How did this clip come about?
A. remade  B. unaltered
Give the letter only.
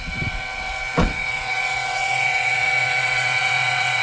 A